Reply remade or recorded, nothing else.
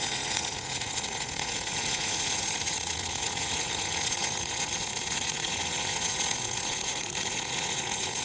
remade